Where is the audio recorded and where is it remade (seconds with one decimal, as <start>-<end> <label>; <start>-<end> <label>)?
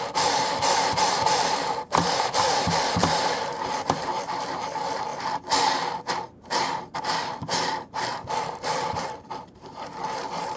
0.0-5.1 remade; 5.1-6.1 recorded; 6.1-10.6 remade